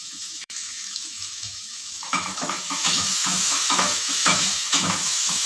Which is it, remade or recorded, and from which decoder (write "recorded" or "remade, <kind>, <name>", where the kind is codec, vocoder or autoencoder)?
remade, autoencoder, DAC-VAE